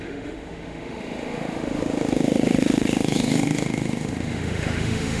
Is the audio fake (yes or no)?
yes